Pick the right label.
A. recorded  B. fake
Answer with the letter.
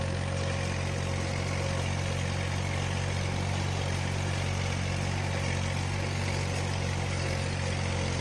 A